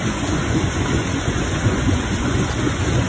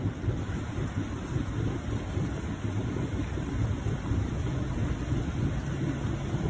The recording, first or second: second